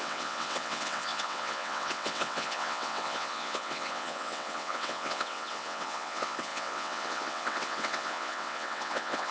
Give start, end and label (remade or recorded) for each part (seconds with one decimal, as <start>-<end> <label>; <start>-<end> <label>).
0.0-9.3 remade